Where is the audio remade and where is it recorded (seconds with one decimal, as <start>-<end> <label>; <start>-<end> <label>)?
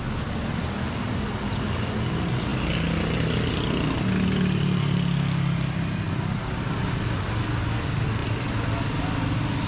0.0-9.7 recorded